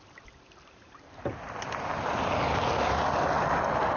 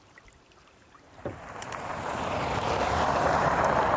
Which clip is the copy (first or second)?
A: second